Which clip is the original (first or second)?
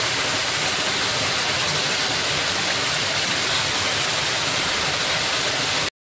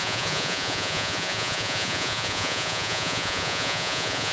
first